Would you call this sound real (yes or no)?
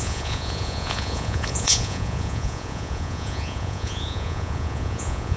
no